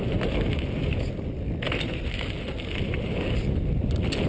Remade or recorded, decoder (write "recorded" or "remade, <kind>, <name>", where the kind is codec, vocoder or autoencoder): recorded